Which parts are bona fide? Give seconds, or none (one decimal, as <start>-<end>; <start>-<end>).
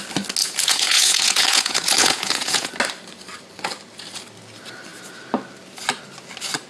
0.0-0.4; 2.7-6.7